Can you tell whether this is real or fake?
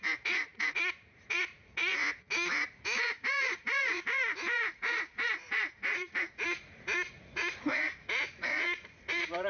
fake